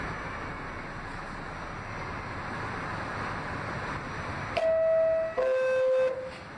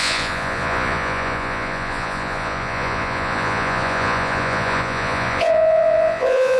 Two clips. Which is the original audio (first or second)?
first